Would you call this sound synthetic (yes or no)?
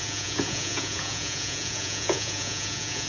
yes